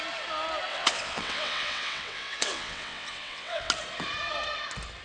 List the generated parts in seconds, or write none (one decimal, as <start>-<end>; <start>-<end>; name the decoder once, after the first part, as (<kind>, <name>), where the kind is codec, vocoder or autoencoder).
0.7-3.7 (vocoder, WaveNeXt)